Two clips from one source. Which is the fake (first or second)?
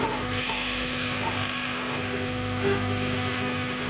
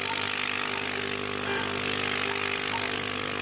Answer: first